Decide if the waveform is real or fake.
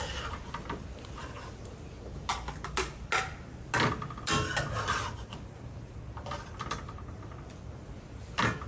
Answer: real